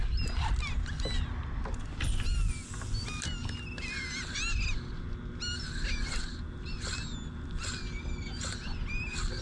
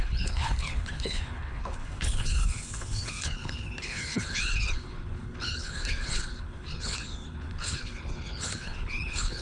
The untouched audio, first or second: first